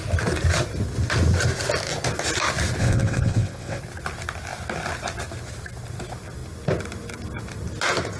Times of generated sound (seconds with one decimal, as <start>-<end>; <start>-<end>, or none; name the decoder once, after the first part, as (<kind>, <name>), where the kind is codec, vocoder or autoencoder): 2.8-3.8 (vocoder, WaveNeXt)